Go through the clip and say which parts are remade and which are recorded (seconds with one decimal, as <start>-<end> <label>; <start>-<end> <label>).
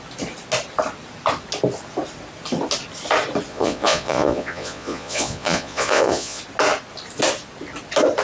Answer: 0.0-3.5 recorded; 3.5-6.4 remade; 6.4-8.2 recorded